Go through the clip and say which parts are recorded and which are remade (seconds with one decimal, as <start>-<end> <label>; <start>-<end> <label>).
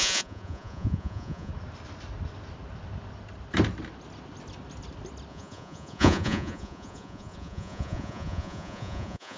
0.0-1.5 remade; 1.5-5.3 recorded; 5.3-9.4 remade